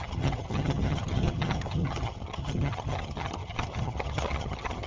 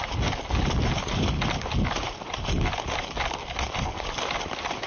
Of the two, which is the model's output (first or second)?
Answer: first